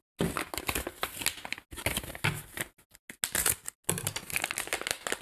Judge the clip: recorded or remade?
recorded